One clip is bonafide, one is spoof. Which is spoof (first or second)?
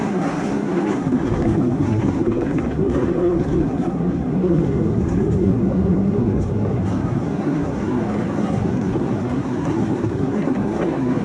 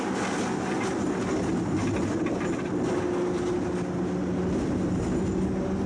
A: first